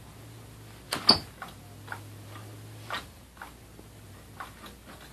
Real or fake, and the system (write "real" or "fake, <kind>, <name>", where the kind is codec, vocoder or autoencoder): real